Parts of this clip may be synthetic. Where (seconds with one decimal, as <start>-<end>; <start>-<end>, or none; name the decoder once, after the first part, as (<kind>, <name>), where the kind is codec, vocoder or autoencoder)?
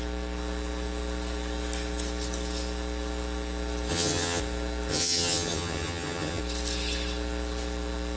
3.9-4.4 (vocoder, HiFi-GAN); 4.9-6.4